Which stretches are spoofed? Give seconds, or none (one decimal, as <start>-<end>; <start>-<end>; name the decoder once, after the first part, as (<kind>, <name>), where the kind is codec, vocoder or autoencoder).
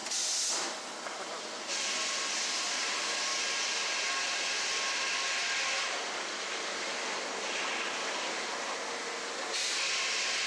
4.2-6.5 (vocoder, BigVGAN v2)